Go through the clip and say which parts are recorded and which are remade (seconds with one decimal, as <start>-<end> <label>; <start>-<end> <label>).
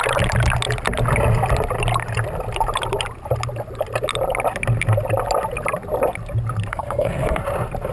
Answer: 0.0-6.7 recorded; 6.7-7.4 remade; 7.4-7.9 recorded